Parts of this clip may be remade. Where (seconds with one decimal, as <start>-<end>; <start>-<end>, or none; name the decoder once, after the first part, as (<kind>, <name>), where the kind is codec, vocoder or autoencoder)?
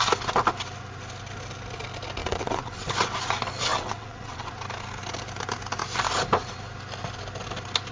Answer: 2.2-2.9 (vocoder, WaveNeXt); 3.7-4.5